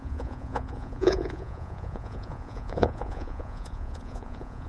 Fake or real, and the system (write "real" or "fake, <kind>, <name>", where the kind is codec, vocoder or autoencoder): fake, vocoder, Vocos